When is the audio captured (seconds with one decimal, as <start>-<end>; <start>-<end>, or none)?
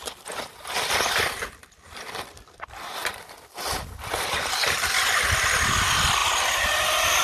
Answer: 6.2-7.2